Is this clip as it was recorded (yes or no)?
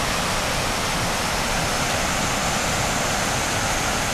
yes